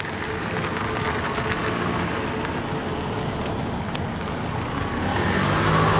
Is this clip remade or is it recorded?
recorded